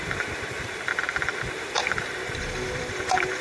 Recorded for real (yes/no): no